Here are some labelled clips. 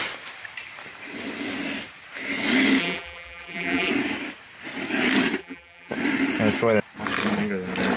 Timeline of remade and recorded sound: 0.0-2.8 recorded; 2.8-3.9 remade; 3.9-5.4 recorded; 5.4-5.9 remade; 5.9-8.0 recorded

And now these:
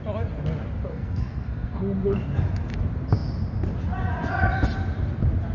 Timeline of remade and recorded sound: 0.0-0.9 recorded; 0.9-1.8 remade; 1.8-5.5 recorded

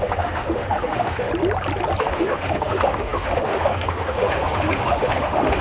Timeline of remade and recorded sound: 0.0-1.3 remade; 1.3-2.0 recorded; 2.0-5.6 remade

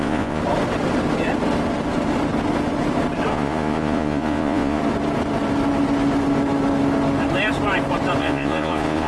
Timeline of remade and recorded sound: 0.0-0.4 remade; 0.4-3.3 recorded; 3.3-4.8 remade; 4.8-8.2 recorded; 8.2-9.1 remade

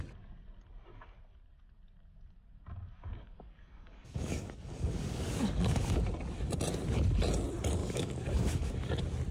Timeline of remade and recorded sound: 0.0-3.1 recorded; 3.1-6.0 remade; 6.0-7.8 recorded; 7.8-8.7 remade; 8.7-9.3 recorded

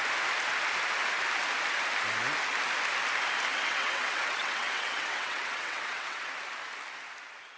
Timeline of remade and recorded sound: 0.0-3.5 recorded; 3.5-6.2 remade; 6.2-7.6 recorded